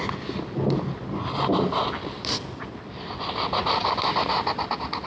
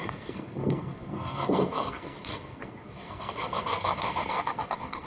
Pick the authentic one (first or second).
first